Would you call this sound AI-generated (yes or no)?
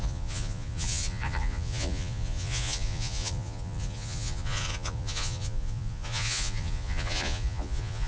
yes